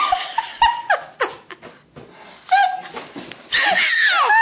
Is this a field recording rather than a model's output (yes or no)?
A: yes